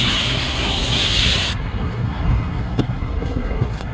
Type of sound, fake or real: fake